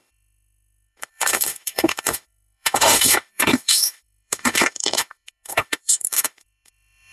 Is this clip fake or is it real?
fake